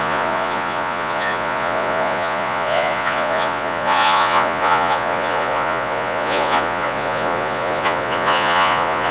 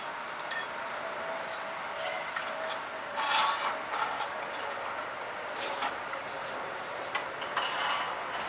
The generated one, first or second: first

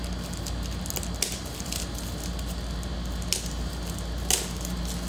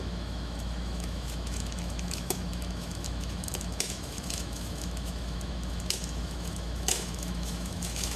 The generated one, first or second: second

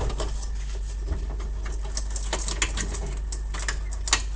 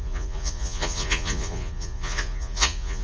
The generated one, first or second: second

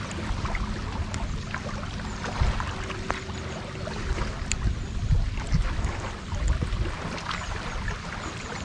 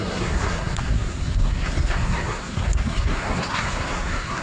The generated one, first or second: second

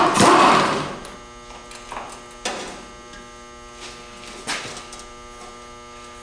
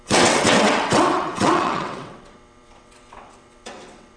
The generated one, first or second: second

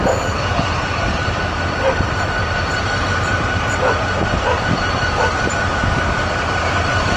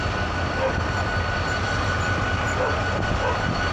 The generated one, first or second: first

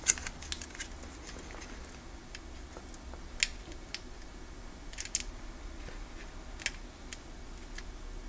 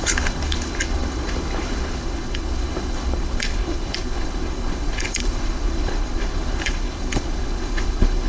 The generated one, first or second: second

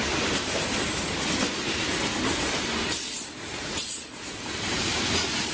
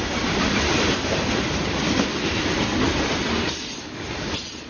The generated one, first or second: second